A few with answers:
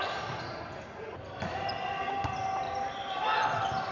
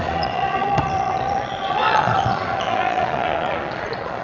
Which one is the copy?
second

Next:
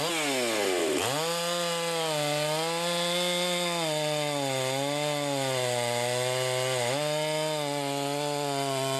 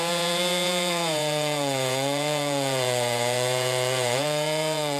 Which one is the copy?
second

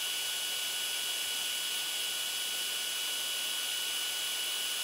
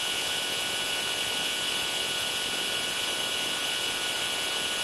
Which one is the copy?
second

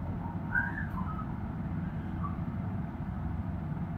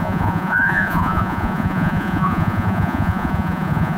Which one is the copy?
second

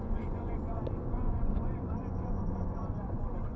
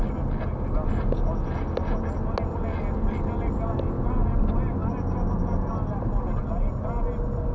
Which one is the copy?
first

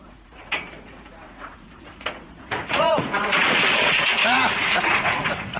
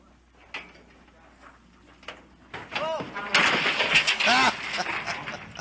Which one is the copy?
first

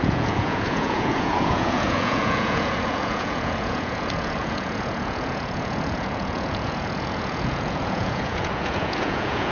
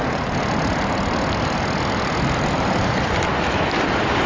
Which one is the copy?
first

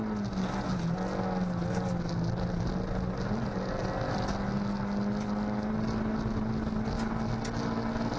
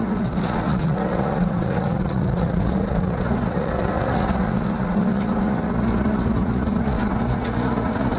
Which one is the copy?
second